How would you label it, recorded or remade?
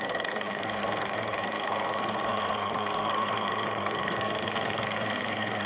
remade